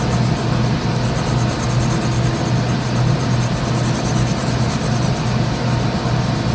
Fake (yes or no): no